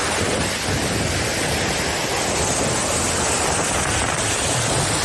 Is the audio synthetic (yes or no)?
no